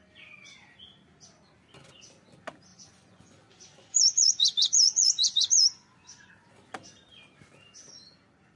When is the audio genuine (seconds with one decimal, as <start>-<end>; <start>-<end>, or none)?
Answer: 0.0-2.7; 6.3-8.6